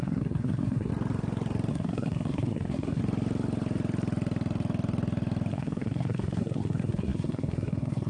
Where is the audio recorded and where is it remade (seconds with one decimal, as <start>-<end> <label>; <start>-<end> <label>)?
0.0-0.9 remade; 0.9-1.7 recorded; 1.7-3.0 remade; 3.0-5.5 recorded; 5.5-8.1 remade